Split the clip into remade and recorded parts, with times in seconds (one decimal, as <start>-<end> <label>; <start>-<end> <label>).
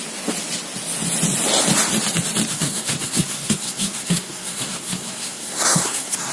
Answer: 0.0-2.5 recorded; 2.5-6.3 remade